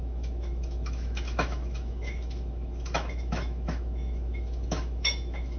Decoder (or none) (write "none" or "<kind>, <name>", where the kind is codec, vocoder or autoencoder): autoencoder, DAC-VAE